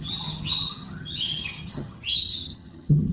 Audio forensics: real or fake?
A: fake